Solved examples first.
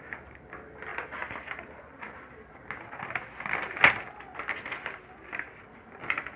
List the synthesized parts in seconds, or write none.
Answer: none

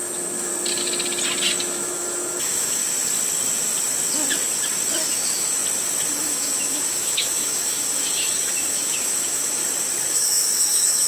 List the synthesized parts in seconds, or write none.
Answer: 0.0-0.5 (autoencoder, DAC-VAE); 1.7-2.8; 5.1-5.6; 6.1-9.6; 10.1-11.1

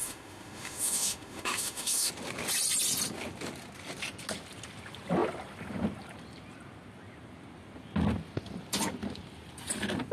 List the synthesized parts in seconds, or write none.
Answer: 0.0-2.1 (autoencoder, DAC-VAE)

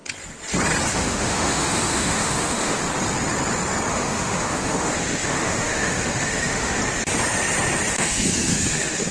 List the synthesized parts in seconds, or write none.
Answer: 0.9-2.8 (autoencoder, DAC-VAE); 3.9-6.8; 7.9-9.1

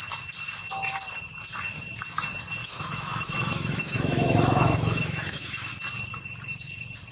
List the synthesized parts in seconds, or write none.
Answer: 2.6-5.7 (autoencoder, DAC-VAE)